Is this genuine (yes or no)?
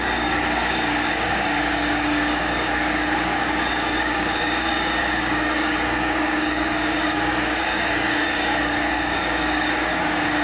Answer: no